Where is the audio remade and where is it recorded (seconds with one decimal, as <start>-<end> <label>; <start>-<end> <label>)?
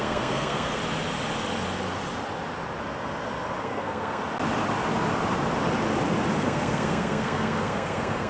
0.0-0.8 remade; 0.8-3.6 recorded; 3.6-4.2 remade; 4.2-6.3 recorded; 6.3-8.3 remade